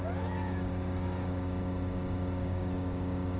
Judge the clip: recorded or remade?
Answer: recorded